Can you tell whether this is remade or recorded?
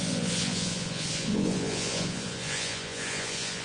remade